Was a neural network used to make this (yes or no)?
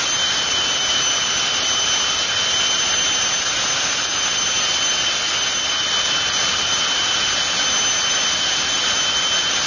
no